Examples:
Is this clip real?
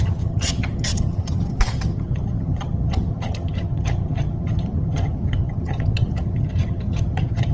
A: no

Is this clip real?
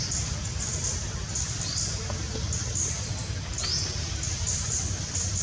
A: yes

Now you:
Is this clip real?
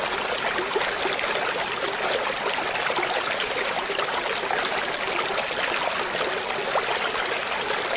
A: yes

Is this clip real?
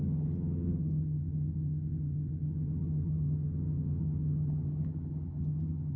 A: no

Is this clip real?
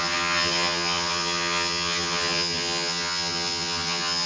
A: no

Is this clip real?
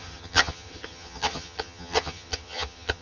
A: no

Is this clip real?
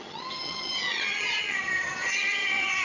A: no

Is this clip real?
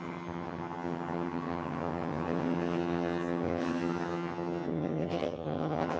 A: no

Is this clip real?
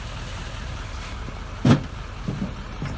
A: yes